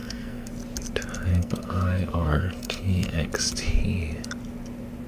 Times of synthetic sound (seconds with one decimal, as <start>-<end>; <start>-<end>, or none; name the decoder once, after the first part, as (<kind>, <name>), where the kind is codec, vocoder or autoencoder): 0.0-0.5 (codec, SNAC); 1.3-3.3